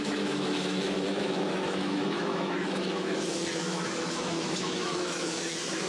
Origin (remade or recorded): remade